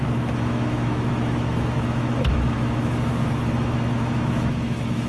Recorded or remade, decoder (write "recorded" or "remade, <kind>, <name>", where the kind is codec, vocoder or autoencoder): remade, autoencoder, DAC-VAE